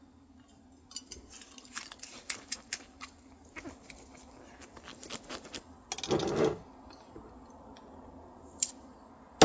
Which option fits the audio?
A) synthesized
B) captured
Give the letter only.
B